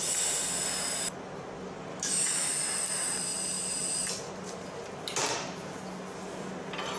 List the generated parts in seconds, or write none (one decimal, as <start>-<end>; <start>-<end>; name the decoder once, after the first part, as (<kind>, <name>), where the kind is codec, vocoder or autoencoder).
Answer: 1.9-2.5 (autoencoder, DAC-VAE)